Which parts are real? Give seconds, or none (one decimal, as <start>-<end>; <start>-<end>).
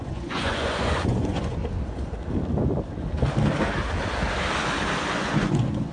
1.6-5.1